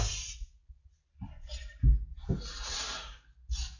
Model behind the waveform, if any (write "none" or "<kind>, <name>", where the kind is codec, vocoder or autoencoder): none